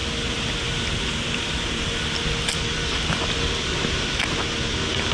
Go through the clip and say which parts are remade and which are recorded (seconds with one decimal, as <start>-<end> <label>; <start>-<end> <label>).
0.0-5.1 recorded